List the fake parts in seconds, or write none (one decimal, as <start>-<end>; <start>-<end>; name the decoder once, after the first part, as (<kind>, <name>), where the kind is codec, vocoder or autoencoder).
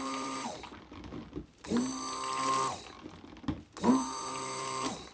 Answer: 0.0-1.9 (vocoder, BigVGAN v2); 3.9-5.1